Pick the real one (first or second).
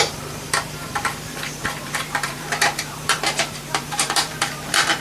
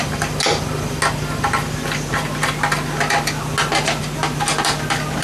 second